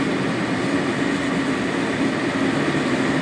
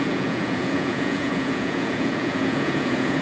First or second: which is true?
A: first